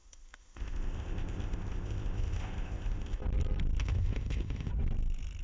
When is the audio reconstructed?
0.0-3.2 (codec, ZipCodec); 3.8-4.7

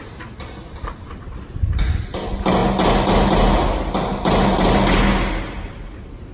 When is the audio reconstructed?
none